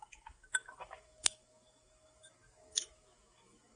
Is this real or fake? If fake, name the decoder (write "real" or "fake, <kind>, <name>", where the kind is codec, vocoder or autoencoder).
fake, autoencoder, DAC-VAE